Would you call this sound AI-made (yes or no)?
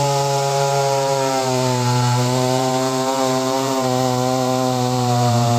yes